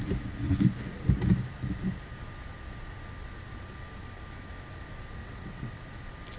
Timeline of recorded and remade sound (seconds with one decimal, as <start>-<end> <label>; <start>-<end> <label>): 0.0-5.2 recorded; 5.2-5.8 remade; 5.8-6.4 recorded